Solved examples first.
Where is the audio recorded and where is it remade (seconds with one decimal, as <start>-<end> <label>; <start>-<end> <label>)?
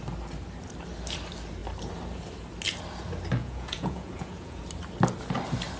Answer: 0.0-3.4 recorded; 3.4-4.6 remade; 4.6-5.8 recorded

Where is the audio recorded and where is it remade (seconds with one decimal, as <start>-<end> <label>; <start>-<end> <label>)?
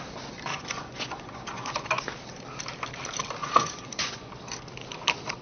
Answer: 0.0-0.5 recorded; 0.5-1.9 remade; 1.9-3.4 recorded; 3.4-4.3 remade; 4.3-5.4 recorded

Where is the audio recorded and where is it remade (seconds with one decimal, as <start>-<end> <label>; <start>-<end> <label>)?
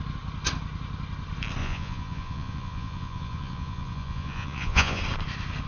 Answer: 0.0-1.6 recorded; 1.6-5.0 remade; 5.0-5.7 recorded